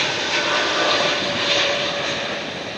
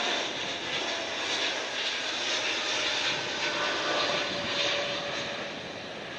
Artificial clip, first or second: first